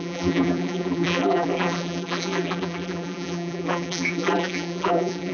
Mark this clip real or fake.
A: fake